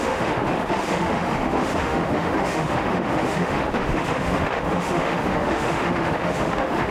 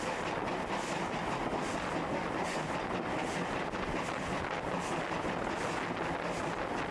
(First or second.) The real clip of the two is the second